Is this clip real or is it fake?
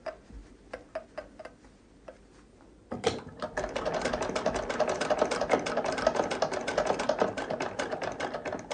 real